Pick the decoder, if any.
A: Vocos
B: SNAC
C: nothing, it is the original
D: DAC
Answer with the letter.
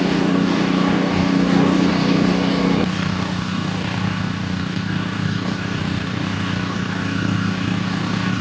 D